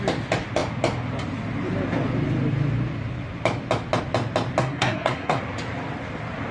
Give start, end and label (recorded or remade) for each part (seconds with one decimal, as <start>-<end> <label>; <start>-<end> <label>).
0.0-4.6 recorded; 4.6-5.4 remade; 5.4-6.5 recorded